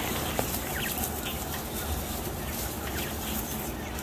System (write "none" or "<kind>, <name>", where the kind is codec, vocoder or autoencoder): none